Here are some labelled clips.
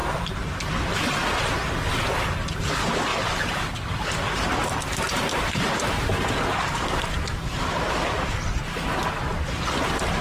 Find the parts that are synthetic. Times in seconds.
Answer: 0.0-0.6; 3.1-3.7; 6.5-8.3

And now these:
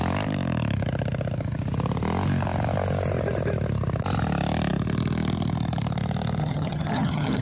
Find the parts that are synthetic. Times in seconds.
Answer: 6.4-7.4

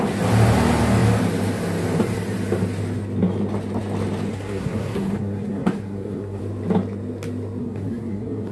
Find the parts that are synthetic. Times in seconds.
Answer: 4.3-6.4; 7.6-8.5